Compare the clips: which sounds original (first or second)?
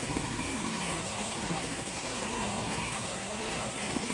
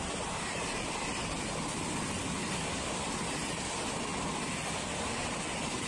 second